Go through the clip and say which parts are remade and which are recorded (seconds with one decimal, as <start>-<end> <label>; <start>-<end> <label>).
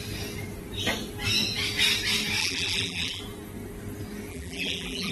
0.0-2.4 recorded; 2.4-3.2 remade; 3.2-4.3 recorded; 4.3-5.1 remade